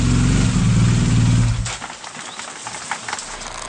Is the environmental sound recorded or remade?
recorded